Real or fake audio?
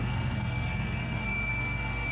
fake